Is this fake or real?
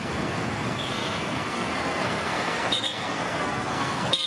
fake